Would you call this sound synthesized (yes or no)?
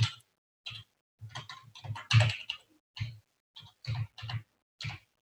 no